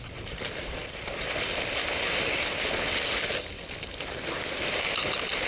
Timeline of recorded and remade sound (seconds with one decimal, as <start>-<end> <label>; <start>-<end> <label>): 0.0-5.5 recorded